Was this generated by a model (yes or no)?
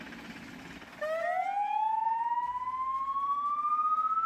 no